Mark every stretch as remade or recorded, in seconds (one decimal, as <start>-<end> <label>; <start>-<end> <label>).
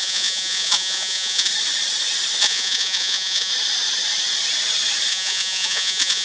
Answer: 0.0-1.5 remade; 1.5-2.4 recorded; 2.4-3.5 remade; 3.5-5.1 recorded; 5.1-6.2 remade